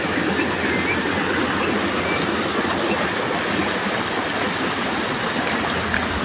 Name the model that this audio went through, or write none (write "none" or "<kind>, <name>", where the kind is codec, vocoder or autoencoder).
none